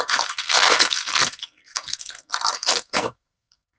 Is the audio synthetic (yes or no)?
yes